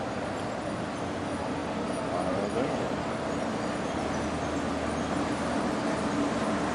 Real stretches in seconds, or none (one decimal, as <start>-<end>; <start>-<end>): 0.0-1.6; 4.2-6.7

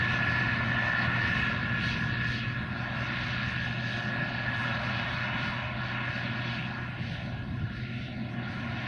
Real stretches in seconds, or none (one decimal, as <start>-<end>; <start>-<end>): 0.0-8.9